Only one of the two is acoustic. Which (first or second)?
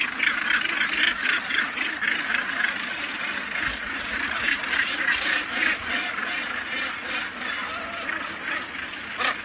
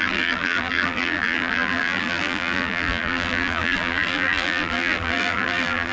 first